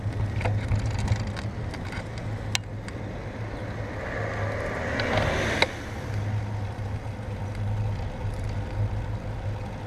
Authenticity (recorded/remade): recorded